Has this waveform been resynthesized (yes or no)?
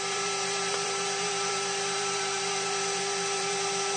yes